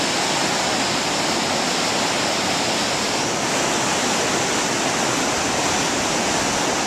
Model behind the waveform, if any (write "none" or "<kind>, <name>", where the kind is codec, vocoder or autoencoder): none